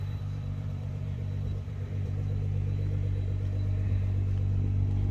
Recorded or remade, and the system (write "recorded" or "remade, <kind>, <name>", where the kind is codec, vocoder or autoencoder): remade, vocoder, BigVGAN v2